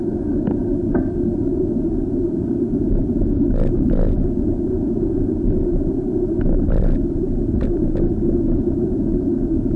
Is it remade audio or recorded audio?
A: remade